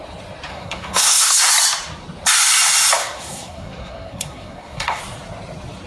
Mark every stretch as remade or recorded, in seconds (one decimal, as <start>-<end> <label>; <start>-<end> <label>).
0.0-0.5 recorded; 0.5-1.5 remade; 1.5-3.0 recorded; 3.0-5.0 remade; 5.0-5.9 recorded